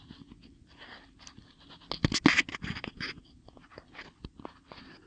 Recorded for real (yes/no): yes